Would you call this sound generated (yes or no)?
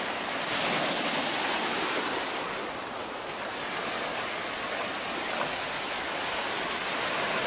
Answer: no